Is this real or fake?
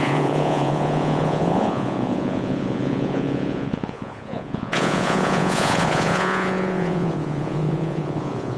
fake